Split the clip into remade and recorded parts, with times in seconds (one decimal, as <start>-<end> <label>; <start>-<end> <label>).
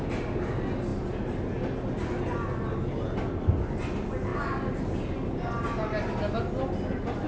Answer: 0.0-7.3 recorded